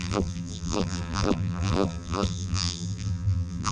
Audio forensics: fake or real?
fake